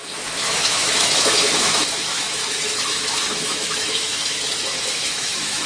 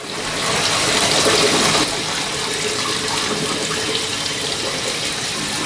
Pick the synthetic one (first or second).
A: first